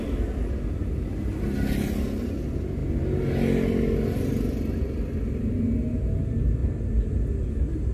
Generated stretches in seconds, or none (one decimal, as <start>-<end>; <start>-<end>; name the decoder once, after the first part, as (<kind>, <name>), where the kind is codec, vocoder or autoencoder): none